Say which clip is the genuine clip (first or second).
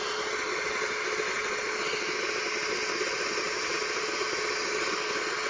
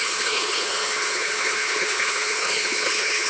first